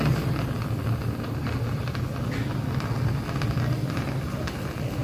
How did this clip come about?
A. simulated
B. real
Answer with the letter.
B